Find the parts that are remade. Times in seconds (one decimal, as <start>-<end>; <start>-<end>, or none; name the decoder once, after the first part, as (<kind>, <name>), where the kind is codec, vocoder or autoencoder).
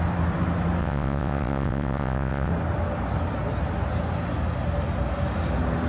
0.8-2.5 (vocoder, WaveNeXt)